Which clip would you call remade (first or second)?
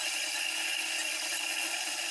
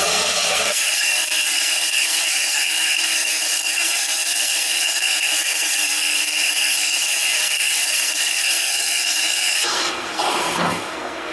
second